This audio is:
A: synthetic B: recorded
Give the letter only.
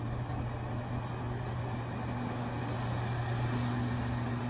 B